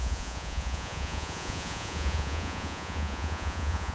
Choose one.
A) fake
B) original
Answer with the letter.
A